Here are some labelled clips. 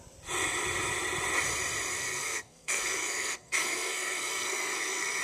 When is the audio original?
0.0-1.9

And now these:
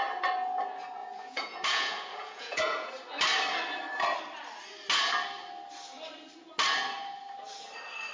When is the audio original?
0.0-1.0; 2.9-8.1

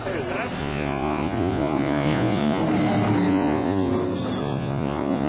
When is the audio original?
0.0-0.6; 2.6-3.3; 3.9-4.4

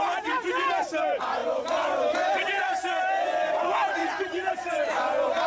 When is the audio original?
0.0-4.0; 4.5-5.5

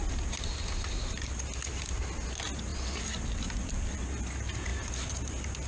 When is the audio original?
0.0-5.7

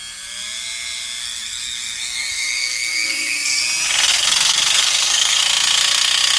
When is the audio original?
0.0-1.2; 3.6-4.1; 5.4-6.4

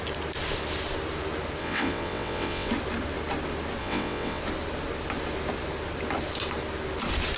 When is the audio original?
0.0-1.6; 2.7-3.8; 4.4-7.4

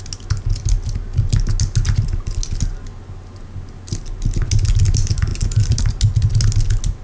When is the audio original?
0.0-7.0